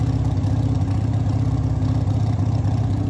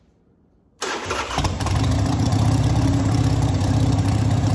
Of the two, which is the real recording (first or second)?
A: first